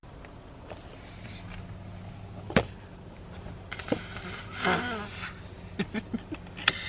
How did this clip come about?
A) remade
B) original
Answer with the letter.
B